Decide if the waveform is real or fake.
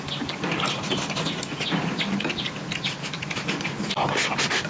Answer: real